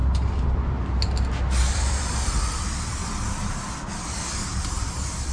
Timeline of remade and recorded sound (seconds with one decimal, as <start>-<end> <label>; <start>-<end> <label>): 0.0-1.6 recorded; 1.6-3.0 remade; 3.0-4.1 recorded; 4.1-5.3 remade